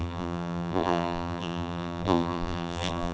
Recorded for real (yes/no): no